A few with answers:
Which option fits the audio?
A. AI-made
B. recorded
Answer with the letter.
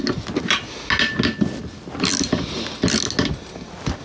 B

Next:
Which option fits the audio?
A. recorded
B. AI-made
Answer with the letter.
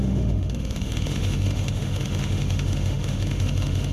B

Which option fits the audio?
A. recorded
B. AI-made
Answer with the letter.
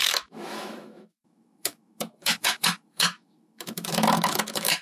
B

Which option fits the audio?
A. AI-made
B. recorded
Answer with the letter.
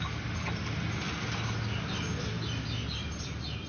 B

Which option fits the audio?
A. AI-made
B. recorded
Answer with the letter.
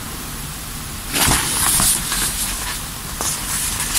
B